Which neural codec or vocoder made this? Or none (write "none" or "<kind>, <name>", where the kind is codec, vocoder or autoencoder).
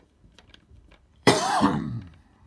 vocoder, BigVGAN v2